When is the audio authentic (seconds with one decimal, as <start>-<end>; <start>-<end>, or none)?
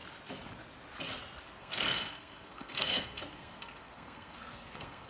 0.0-1.6